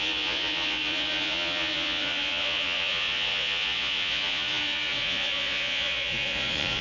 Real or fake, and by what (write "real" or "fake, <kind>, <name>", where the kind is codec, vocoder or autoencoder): fake, vocoder, Vocos